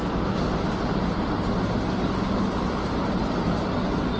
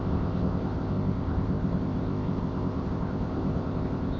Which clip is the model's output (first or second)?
second